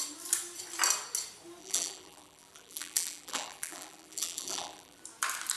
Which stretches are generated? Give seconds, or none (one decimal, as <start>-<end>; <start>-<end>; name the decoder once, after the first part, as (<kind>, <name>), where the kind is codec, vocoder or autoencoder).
1.6-5.0 (vocoder, BigVGAN v2)